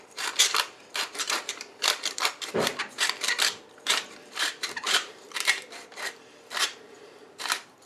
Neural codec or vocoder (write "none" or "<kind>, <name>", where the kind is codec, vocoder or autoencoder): vocoder, BigVGAN v2